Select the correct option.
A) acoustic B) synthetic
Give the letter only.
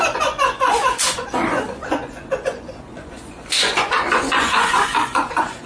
B